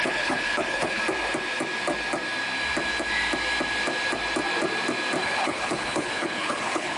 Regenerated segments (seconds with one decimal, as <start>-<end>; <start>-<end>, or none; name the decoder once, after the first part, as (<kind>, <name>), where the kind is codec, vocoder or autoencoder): 0.0-1.0 (codec, HILCodec); 5.2-7.0